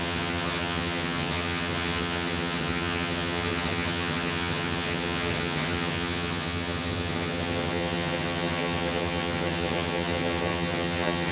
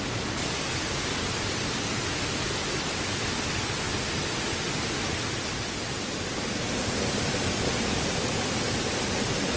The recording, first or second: second